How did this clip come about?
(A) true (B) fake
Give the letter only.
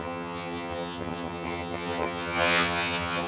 B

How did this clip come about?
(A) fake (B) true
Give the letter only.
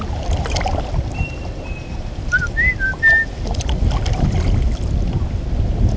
B